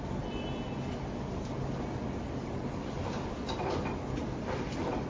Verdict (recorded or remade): recorded